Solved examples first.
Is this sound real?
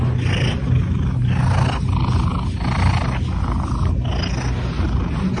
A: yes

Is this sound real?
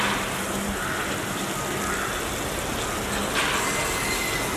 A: yes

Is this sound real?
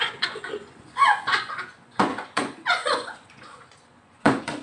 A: no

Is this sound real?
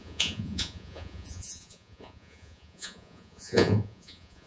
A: no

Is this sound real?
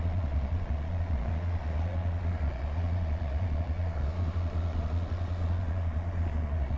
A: no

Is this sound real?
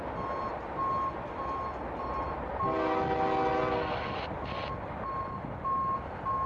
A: yes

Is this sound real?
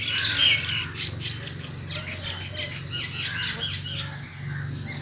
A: yes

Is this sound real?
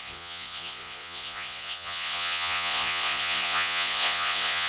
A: no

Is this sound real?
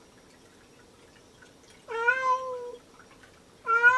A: yes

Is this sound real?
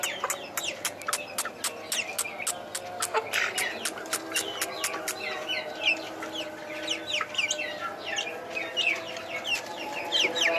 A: yes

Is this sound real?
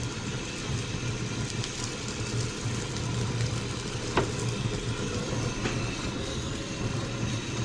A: yes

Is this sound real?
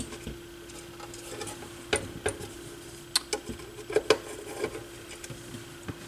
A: yes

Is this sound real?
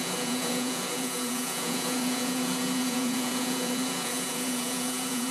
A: no